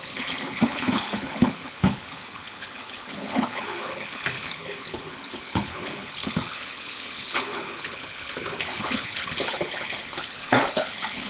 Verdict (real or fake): fake